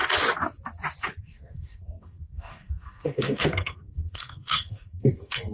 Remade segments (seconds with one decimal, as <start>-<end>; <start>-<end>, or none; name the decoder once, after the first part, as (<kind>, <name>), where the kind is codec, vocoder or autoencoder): 1.2-5.5 (codec, SNAC)